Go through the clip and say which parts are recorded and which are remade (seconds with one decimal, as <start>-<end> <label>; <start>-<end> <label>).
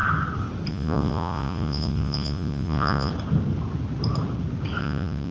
0.0-0.7 recorded; 0.7-3.1 remade; 3.1-4.8 recorded; 4.8-5.3 remade